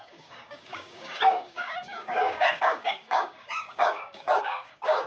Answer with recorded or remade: remade